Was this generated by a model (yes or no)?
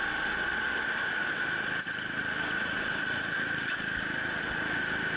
no